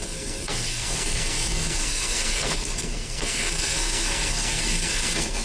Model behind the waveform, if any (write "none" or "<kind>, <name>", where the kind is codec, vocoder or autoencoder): codec, SNAC